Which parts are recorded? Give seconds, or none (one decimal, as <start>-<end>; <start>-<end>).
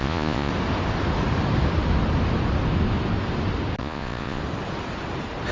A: 0.5-3.8; 4.4-5.5